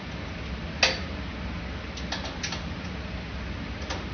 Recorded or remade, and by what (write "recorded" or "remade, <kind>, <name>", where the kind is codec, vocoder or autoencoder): recorded